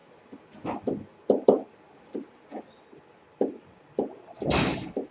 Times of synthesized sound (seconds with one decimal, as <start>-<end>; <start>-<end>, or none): none